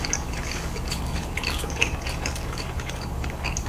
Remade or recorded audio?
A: remade